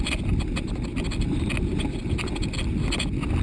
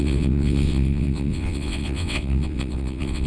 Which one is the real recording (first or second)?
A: first